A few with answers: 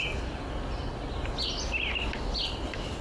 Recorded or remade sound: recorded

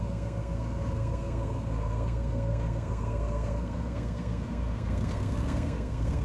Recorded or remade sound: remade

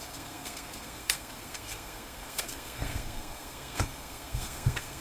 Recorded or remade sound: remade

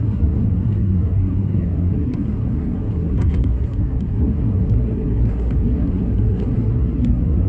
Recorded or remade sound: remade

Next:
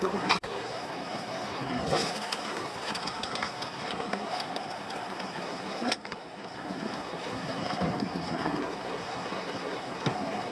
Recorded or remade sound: remade